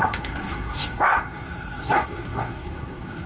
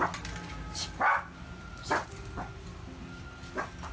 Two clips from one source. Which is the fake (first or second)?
first